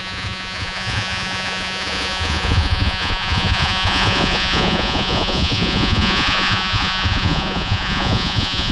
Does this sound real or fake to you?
fake